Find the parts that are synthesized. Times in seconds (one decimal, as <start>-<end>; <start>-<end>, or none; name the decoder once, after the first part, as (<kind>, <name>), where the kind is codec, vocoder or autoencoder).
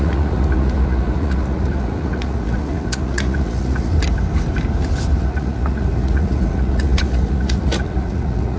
0.0-3.9 (vocoder, Vocos); 5.2-8.6